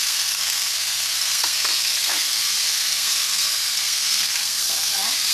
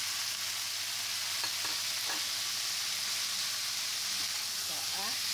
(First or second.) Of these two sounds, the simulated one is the first